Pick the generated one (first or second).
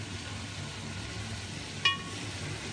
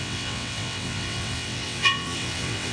second